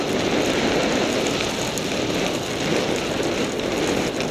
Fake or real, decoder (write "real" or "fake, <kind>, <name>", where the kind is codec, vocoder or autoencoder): real